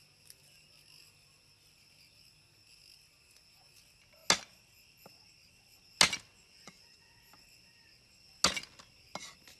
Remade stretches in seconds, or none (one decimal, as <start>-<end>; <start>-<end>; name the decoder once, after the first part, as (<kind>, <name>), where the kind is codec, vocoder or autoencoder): 6.3-7.1 (vocoder, Vocos)